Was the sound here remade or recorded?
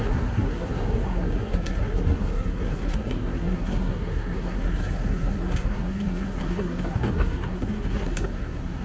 remade